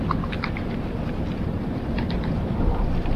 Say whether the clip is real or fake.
fake